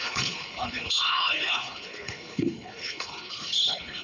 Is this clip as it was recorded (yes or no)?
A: no